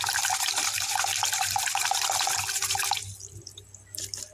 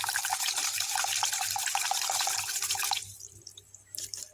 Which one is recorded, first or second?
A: first